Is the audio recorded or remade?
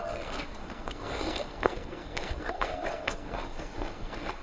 remade